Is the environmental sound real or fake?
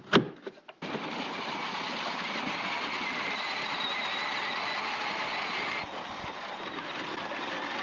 real